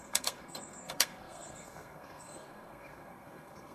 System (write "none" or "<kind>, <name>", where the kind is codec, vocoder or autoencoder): codec, SNAC